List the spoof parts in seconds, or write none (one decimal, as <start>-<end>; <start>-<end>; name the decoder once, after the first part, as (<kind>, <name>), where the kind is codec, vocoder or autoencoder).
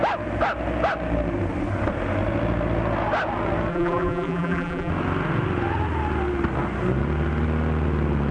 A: 3.7-4.9 (vocoder, BigVGAN v2)